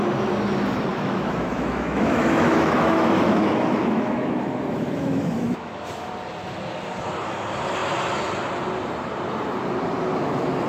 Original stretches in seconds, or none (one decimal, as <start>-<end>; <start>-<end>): 0.0-0.9; 6.1-10.7